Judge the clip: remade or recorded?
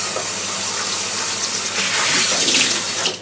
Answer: recorded